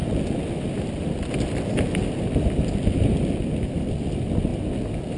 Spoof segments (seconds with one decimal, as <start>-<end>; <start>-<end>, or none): none